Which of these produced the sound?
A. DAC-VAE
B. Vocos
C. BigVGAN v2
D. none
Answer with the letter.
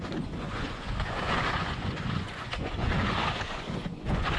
B